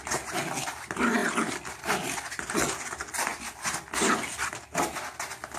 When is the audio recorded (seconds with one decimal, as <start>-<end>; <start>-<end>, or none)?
0.0-5.6